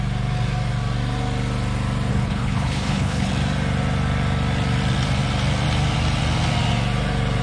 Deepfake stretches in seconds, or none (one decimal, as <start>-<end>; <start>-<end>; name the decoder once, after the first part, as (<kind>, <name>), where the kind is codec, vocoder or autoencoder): 2.1-3.3 (codec, HILCodec)